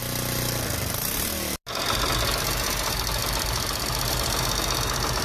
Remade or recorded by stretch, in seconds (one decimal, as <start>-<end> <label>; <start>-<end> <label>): 0.0-3.2 recorded; 3.2-4.1 remade; 4.1-5.2 recorded